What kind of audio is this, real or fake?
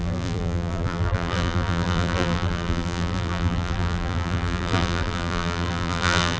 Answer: fake